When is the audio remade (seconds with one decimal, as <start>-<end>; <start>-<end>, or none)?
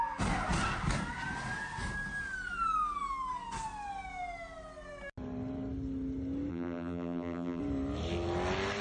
6.5-7.6